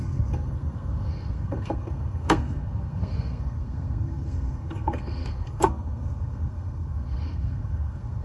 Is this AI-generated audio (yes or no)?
yes